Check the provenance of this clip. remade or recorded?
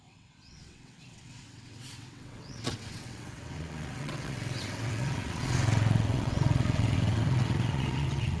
remade